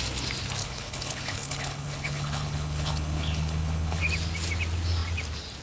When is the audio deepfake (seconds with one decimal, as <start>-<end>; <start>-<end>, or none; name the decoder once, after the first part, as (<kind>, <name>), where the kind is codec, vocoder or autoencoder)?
0.6-4.0 (codec, HILCodec)